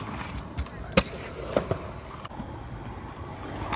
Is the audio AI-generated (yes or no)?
no